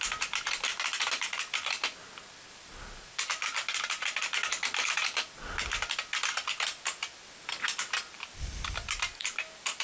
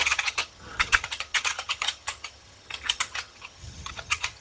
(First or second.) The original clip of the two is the first